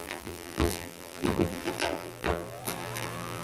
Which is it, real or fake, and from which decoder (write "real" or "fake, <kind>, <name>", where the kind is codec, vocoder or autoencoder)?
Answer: fake, vocoder, BigVGAN v2